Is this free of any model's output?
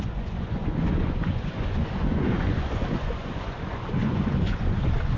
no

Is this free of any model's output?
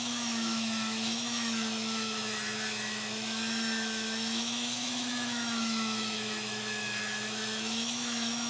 no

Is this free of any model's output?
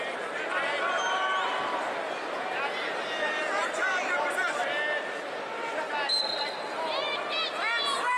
yes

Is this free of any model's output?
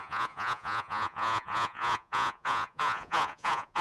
no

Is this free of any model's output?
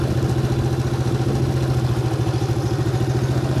yes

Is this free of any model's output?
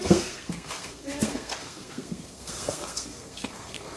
no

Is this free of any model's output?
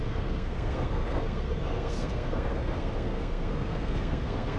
no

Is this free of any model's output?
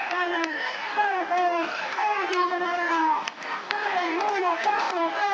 no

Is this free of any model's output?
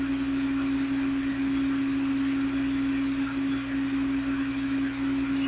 yes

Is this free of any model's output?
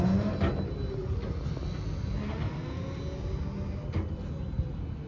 yes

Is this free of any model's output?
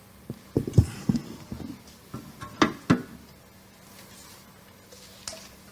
yes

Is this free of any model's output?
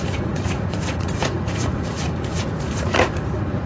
no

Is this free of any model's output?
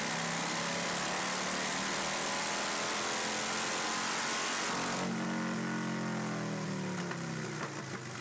yes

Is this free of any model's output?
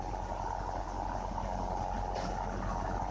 yes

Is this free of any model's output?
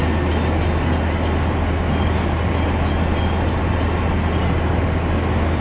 yes